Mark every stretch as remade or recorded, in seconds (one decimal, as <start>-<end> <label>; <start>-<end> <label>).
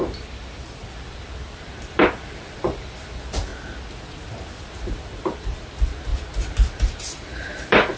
0.0-0.9 recorded; 0.9-3.5 remade; 3.5-4.3 recorded; 4.3-6.1 remade; 6.1-7.3 recorded; 7.3-8.0 remade